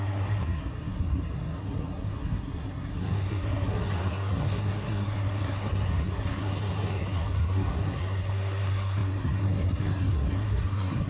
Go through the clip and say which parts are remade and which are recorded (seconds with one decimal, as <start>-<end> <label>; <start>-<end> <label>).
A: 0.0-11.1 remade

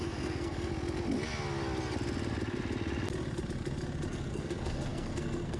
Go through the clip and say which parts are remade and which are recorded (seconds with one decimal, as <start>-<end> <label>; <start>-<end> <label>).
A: 0.0-0.7 remade; 0.7-4.1 recorded; 4.1-5.6 remade

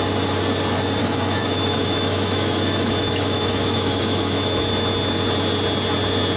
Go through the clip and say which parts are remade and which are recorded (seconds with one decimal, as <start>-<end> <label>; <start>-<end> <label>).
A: 0.0-1.0 recorded; 1.0-4.6 remade; 4.6-6.4 recorded

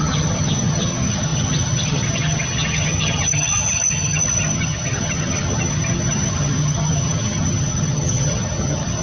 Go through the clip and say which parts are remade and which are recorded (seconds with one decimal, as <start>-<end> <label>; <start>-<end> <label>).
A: 0.0-9.0 remade

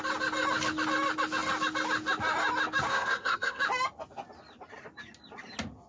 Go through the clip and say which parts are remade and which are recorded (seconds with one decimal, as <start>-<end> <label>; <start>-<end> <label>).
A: 0.0-2.9 recorded; 2.9-3.6 remade; 3.6-5.9 recorded

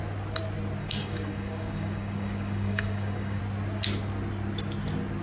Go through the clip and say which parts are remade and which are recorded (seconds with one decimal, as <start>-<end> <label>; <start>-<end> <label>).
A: 0.0-0.8 recorded; 0.8-3.4 remade; 3.4-5.2 recorded

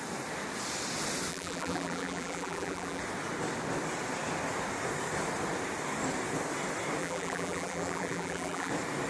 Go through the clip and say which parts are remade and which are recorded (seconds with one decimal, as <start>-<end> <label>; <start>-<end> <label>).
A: 0.0-1.3 recorded; 1.3-3.0 remade; 3.0-7.0 recorded; 7.0-8.7 remade; 8.7-9.1 recorded